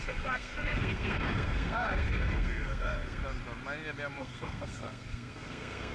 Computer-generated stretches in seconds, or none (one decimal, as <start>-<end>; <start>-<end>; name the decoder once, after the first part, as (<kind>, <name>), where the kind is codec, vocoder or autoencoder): 0.0-3.2 (codec, SNAC); 4.2-5.9